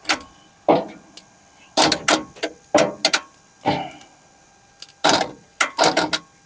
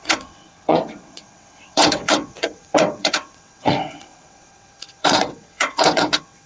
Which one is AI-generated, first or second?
second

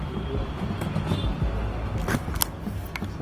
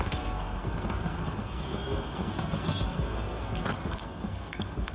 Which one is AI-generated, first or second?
second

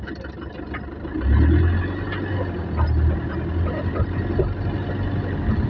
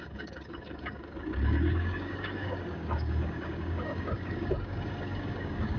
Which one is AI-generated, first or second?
second